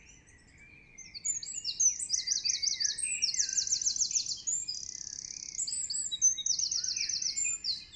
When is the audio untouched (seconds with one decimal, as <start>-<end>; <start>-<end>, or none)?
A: 0.0-8.0